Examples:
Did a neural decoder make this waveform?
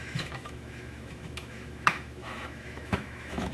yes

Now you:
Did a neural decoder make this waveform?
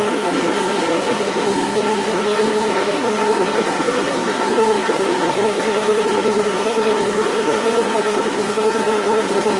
yes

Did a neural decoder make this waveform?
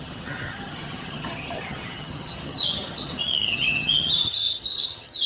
yes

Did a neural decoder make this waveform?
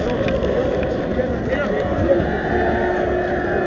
no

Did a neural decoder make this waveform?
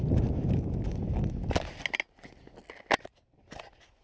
no